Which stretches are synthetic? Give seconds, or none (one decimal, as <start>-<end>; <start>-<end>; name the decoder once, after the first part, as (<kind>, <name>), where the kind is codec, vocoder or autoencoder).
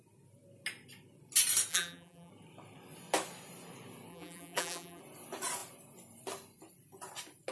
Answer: 1.7-2.3 (vocoder, BigVGAN v2); 4.1-5.0